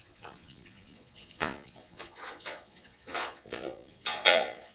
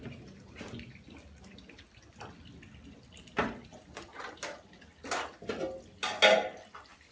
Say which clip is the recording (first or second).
second